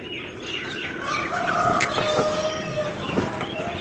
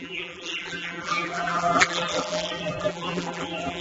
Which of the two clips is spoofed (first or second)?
second